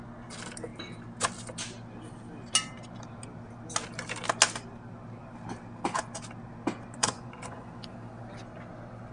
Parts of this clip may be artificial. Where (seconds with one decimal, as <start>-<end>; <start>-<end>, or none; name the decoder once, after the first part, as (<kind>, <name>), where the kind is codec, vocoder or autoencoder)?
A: 7.0-7.7 (vocoder, Vocos)